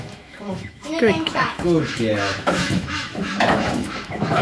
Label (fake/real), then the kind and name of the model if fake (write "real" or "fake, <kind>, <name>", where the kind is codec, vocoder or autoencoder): fake, autoencoder, DAC-VAE